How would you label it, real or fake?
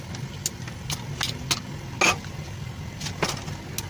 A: real